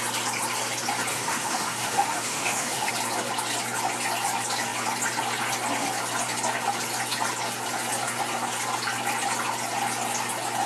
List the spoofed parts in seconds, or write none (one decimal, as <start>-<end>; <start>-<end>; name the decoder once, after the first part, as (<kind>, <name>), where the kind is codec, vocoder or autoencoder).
1.1-2.9 (autoencoder, DAC-VAE)